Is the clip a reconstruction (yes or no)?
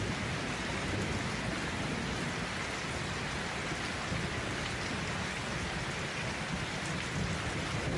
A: no